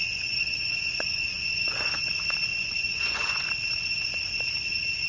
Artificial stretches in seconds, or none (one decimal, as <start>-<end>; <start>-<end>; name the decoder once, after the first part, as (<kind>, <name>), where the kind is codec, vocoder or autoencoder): 0.0-1.9 (vocoder, Vocos); 2.5-3.5